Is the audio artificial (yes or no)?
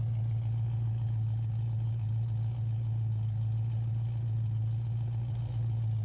no